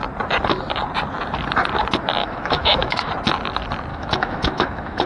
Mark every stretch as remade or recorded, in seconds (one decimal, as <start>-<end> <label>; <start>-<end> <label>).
0.0-2.2 recorded; 2.2-3.1 remade; 3.1-3.9 recorded; 3.9-5.1 remade